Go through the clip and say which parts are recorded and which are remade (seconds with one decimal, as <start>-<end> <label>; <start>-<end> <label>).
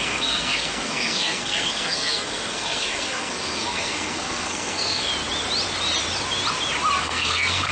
0.0-5.1 remade; 5.1-7.0 recorded; 7.0-7.7 remade